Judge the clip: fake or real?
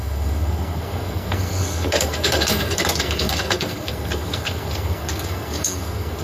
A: fake